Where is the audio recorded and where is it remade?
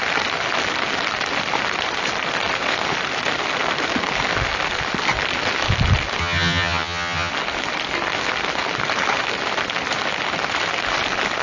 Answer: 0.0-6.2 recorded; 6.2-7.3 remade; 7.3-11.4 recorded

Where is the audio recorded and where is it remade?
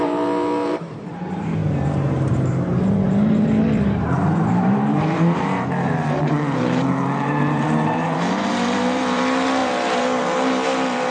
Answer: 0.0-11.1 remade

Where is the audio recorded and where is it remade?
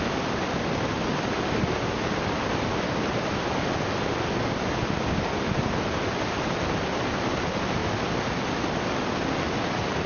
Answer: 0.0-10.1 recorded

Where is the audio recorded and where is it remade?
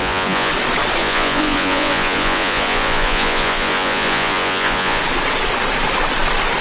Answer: 0.0-0.5 remade; 0.5-1.0 recorded; 1.0-5.0 remade; 5.0-6.6 recorded